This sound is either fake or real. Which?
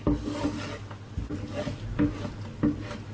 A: real